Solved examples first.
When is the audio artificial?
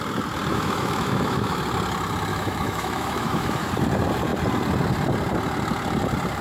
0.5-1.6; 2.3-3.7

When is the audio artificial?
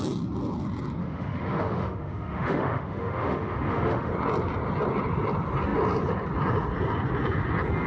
1.0-4.1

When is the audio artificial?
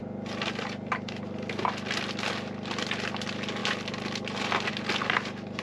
none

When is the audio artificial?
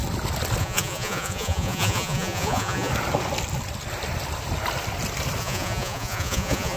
0.6-2.9; 5.4-6.8